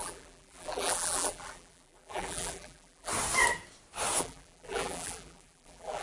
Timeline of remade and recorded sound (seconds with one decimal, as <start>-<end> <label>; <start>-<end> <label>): 0.0-3.1 remade; 3.1-4.2 recorded; 4.2-6.0 remade